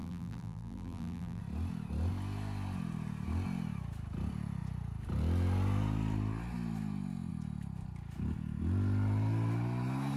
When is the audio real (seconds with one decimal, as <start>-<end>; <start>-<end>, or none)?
1.4-10.2